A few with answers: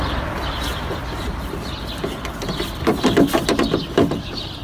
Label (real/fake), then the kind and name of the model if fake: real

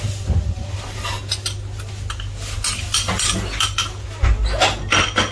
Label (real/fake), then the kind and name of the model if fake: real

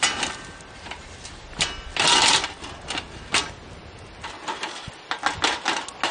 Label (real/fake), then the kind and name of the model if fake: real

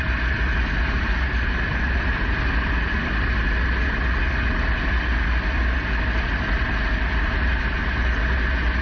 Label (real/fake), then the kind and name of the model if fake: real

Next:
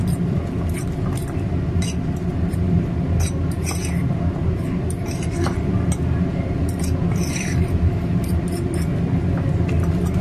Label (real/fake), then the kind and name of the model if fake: fake, vocoder, BigVGAN v2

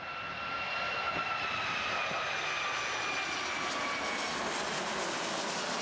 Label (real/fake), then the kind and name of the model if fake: real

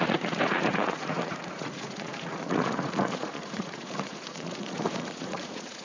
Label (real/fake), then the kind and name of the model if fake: fake, vocoder, Vocos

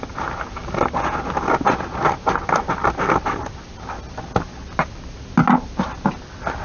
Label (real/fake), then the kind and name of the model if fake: real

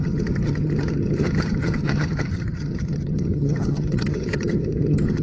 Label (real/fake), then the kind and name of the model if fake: fake, vocoder, HiFi-GAN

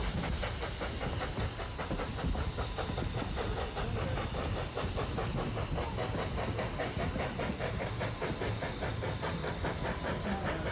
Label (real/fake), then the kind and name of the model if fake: real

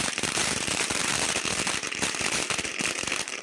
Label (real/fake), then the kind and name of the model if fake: fake, vocoder, BigVGAN v2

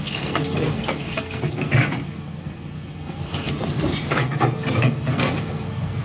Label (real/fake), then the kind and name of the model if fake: fake, codec, SNAC